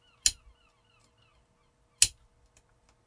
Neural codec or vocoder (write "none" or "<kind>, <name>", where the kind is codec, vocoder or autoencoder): none